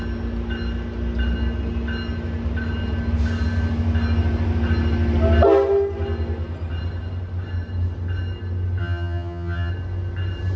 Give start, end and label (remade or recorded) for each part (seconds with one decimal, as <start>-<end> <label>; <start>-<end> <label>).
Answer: 0.0-8.8 recorded; 8.8-9.7 remade; 9.7-10.6 recorded